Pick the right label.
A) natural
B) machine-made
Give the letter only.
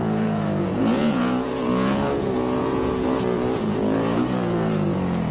B